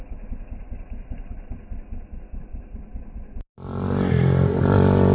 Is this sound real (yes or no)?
yes